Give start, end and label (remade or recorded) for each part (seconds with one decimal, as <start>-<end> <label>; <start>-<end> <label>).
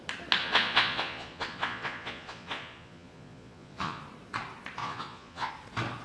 0.0-0.4 recorded; 0.4-4.0 remade; 4.0-4.8 recorded; 4.8-5.5 remade; 5.5-6.0 recorded